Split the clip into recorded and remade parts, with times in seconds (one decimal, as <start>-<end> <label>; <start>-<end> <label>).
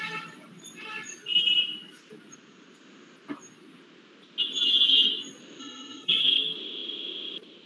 0.0-5.6 recorded; 5.6-6.2 remade; 6.2-7.7 recorded